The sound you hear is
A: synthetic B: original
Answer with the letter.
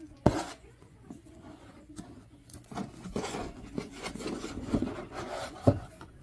A